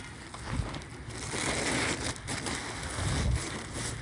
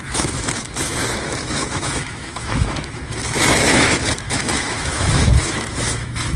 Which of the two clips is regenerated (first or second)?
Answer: second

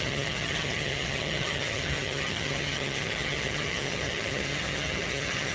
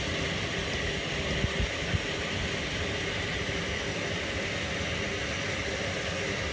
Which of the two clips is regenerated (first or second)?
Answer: first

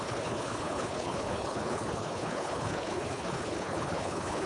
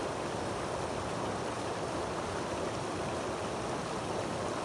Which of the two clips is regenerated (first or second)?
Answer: first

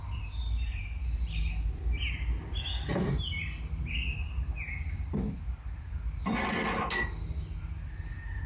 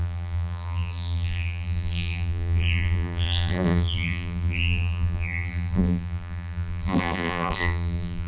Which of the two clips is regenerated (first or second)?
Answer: second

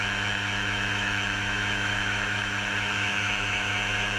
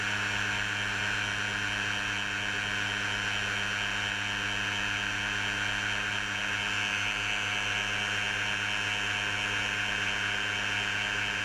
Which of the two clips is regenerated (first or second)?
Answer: first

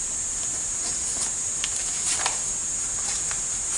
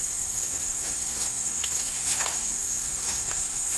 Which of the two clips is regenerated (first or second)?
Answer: second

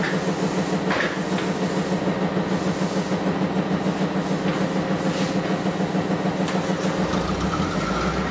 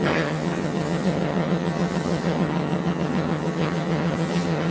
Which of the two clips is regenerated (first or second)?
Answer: second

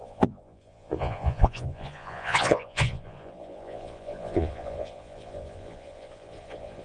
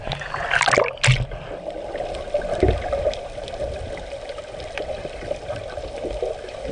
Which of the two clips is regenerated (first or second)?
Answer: first